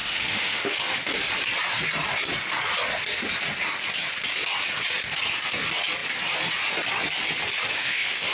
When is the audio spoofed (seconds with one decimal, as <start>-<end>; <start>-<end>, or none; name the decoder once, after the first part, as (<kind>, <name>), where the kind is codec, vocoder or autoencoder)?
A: 0.0-0.8 (autoencoder, DAC-VAE); 7.7-8.3